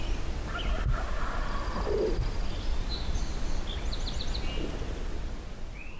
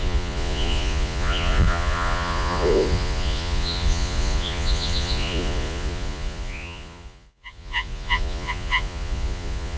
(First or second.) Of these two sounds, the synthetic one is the second